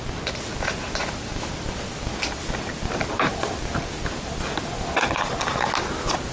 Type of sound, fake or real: real